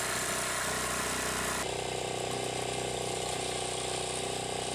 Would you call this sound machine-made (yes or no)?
no